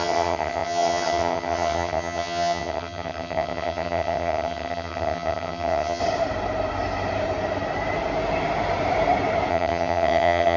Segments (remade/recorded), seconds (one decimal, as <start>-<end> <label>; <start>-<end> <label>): 0.0-6.0 remade; 6.0-9.5 recorded; 9.5-10.6 remade